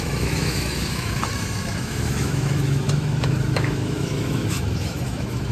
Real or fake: fake